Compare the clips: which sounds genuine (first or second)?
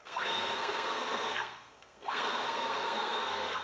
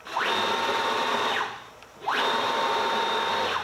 second